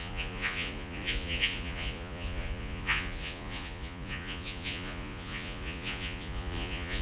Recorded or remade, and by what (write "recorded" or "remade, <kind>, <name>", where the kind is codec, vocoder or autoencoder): remade, vocoder, Vocos